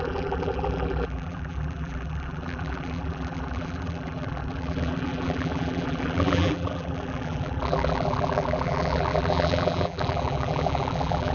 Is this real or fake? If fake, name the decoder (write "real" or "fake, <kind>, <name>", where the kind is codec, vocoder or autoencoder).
fake, vocoder, BigVGAN v2